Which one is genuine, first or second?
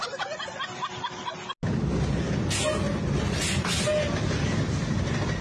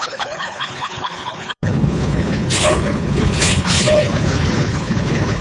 first